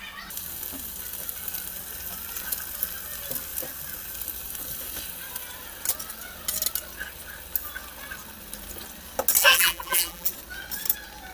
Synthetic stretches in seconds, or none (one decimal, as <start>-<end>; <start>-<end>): 9.4-10.3